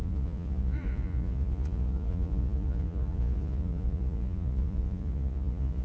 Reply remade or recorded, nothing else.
remade